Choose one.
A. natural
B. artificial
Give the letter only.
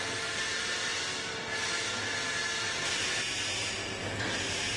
A